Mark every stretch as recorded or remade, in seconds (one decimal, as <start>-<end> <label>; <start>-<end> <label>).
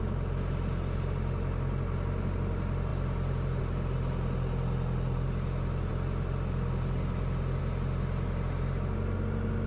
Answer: 0.0-9.7 recorded